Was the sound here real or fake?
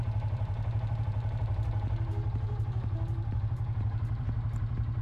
fake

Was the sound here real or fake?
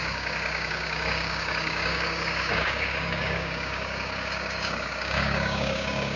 fake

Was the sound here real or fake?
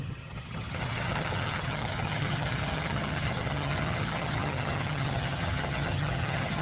fake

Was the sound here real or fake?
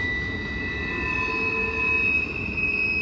real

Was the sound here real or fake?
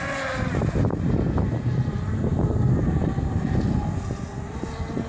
real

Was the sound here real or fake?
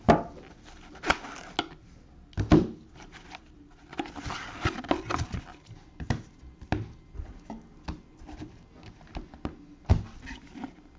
real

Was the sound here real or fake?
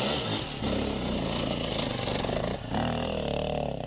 real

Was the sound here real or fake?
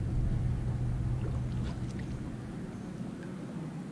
real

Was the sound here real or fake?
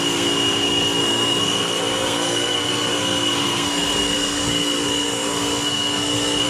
fake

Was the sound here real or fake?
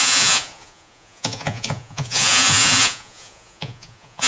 fake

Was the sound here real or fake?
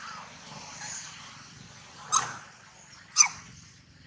real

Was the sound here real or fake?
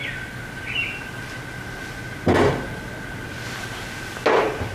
real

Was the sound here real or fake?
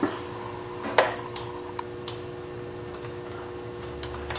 real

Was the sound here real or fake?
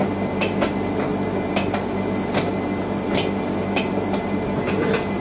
real